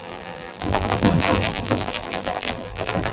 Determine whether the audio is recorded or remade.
remade